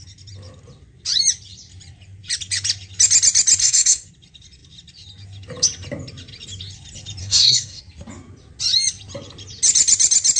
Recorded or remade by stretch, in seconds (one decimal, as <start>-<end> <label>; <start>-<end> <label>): 0.0-3.6 recorded; 3.6-4.1 remade; 4.1-7.2 recorded; 7.2-7.8 remade; 7.8-10.4 recorded